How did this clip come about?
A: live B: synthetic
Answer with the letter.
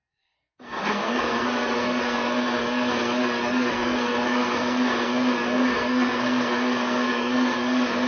B